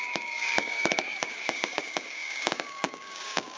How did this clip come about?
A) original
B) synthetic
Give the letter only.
B